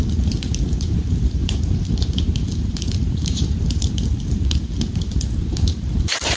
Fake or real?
fake